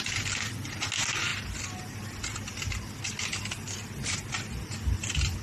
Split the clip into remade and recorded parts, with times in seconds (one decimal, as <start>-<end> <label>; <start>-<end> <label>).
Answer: 0.0-5.4 recorded